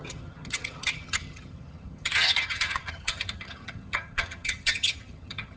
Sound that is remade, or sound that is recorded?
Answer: remade